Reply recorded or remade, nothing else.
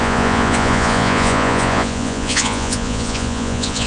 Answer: remade